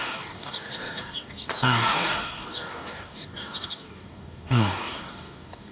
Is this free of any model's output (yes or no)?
no